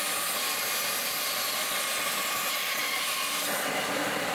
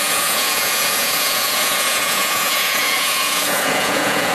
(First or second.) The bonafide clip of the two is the first